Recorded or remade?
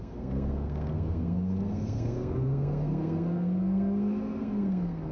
remade